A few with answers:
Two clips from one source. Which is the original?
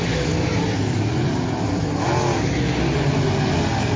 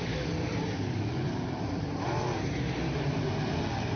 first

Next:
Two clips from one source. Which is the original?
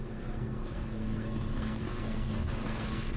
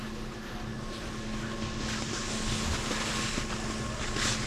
second